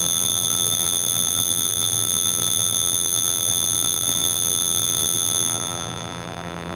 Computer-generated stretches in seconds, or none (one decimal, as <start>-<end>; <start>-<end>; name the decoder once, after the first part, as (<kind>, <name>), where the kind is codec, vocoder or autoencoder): 0.0-6.8 (vocoder, BigVGAN v2)